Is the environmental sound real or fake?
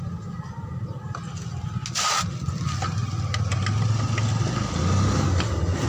real